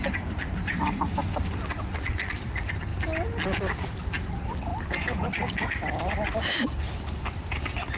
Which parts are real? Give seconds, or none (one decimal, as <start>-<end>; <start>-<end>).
0.0-8.0